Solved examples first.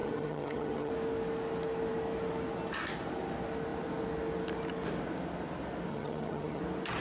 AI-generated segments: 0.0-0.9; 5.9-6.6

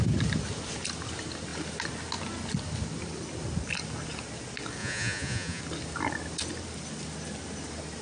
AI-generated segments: 4.8-5.6

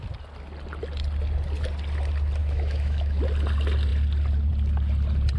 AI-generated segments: 2.4-3.2

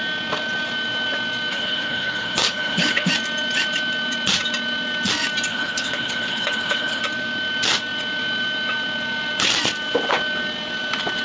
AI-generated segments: 1.5-3.1; 5.5-7.0

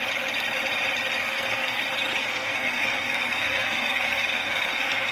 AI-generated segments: 1.2-1.8; 2.2-5.1